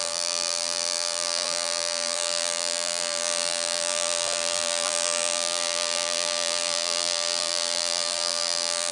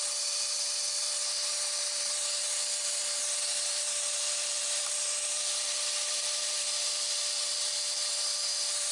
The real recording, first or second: second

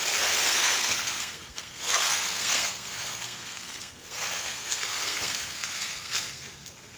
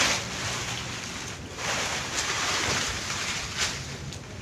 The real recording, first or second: second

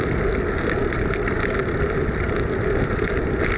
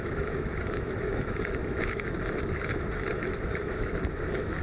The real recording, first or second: first